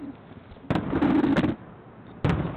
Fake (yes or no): no